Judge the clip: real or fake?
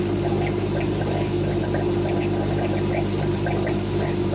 real